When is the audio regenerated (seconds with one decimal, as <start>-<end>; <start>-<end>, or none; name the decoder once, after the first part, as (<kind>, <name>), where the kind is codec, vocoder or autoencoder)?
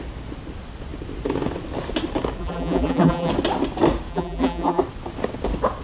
2.4-3.3 (vocoder, BigVGAN v2); 4.1-4.8